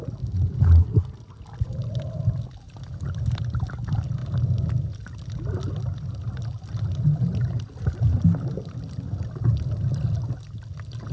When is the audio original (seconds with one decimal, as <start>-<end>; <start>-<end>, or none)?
0.0-11.1

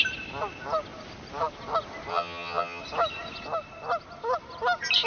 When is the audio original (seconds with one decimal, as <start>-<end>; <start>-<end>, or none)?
0.0-2.1; 2.8-5.1